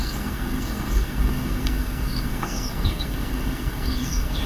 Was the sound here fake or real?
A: fake